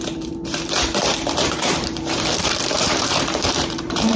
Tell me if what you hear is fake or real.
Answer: fake